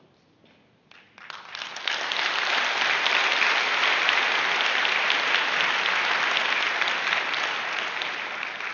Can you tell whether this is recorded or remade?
recorded